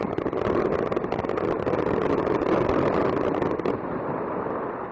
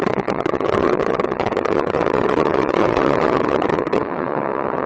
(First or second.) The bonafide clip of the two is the first